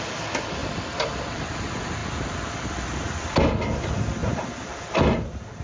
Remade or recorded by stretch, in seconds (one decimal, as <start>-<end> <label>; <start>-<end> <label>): 0.0-0.6 recorded; 0.6-1.2 remade; 1.2-5.6 recorded